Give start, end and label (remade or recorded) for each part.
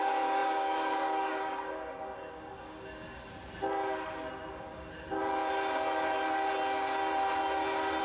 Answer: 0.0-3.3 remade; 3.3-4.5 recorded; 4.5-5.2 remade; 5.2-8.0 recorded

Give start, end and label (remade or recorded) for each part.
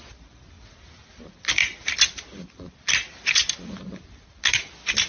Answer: 0.0-5.1 recorded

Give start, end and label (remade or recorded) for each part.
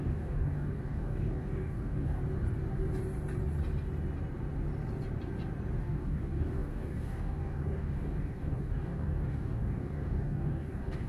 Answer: 0.0-2.2 remade; 2.2-5.8 recorded; 5.8-11.1 remade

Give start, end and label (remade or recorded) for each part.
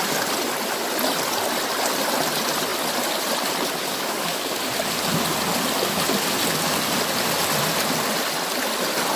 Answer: 0.0-3.8 recorded; 3.8-4.6 remade; 4.6-9.2 recorded